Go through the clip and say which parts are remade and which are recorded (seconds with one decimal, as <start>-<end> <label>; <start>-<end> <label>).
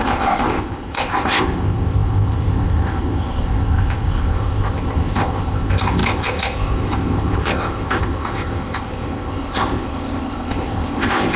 0.0-11.4 remade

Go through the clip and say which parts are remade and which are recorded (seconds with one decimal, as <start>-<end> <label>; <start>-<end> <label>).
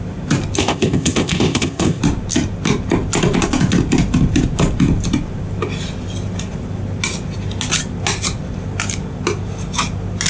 0.0-0.6 recorded; 0.6-2.0 remade; 2.0-10.3 recorded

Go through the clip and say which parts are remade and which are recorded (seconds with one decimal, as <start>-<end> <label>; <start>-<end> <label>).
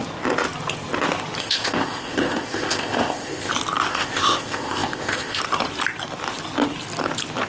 0.0-1.4 recorded; 1.4-3.5 remade; 3.5-3.9 recorded; 3.9-5.4 remade; 5.4-7.5 recorded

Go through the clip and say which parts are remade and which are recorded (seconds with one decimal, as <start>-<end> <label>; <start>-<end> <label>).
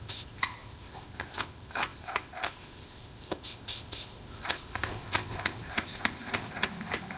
0.0-7.2 remade